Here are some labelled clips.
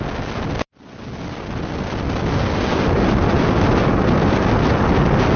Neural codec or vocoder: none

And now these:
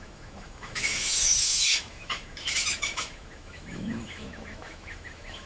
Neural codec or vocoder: autoencoder, DAC-VAE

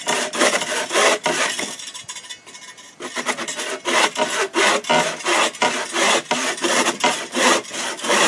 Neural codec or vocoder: none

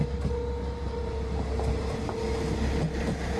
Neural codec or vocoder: none